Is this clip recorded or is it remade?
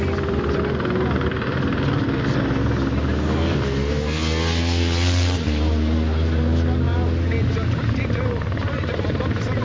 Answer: recorded